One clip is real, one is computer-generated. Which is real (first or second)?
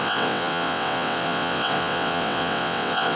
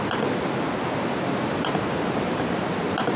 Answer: second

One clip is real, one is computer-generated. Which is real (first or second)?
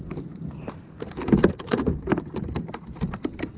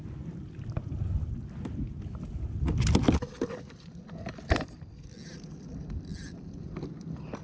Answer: second